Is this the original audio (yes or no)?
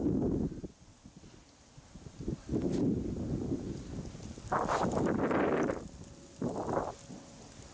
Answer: yes